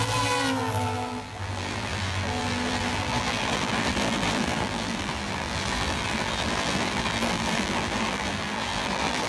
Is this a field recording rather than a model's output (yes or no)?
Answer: no